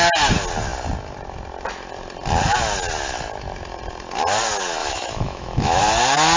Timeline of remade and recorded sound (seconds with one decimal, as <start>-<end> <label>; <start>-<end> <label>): 0.0-4.8 recorded; 4.8-5.8 remade; 5.8-6.4 recorded